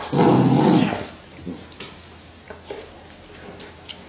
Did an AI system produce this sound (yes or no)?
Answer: no